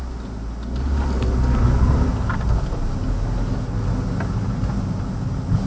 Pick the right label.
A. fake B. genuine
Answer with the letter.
B